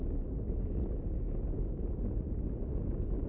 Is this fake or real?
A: real